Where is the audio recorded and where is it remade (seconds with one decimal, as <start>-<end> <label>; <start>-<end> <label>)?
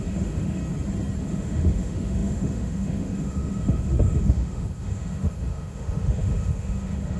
0.0-0.6 remade; 0.6-1.2 recorded; 1.2-7.2 remade